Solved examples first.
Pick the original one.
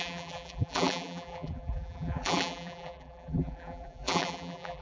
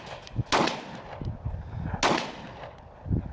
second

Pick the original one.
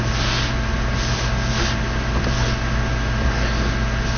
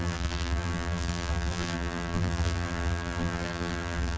first